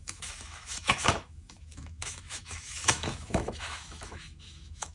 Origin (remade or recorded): remade